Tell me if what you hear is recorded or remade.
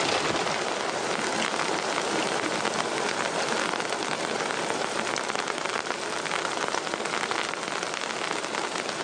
recorded